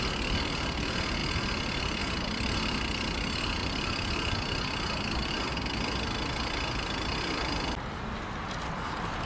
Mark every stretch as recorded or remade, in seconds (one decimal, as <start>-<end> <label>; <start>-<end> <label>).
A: 0.0-3.6 recorded; 3.6-5.3 remade; 5.3-9.3 recorded